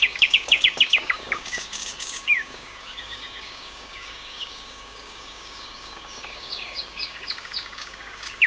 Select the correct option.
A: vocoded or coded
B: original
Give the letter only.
A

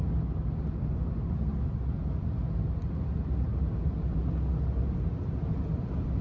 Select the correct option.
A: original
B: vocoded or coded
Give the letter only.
A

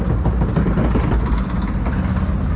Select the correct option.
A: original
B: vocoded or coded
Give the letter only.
A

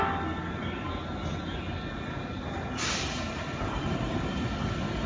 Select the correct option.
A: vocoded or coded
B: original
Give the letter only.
B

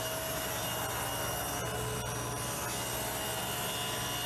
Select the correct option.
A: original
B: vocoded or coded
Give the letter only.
A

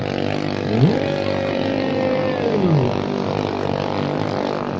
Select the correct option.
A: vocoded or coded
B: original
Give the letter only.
B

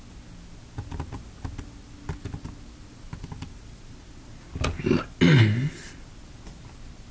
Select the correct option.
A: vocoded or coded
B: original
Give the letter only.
B